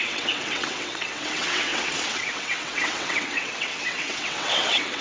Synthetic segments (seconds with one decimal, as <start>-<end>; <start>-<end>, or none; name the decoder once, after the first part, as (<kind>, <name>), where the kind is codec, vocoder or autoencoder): 0.0-5.0 (vocoder, WaveNeXt)